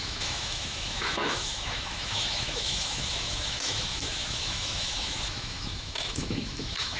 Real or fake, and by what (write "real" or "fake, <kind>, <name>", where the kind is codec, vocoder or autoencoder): fake, autoencoder, DAC-VAE